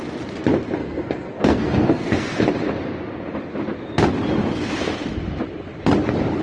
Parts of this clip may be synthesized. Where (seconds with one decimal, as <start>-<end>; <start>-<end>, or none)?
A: 0.8-2.4